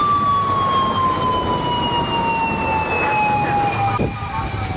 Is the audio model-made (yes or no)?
no